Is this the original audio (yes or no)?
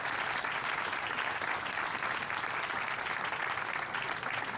yes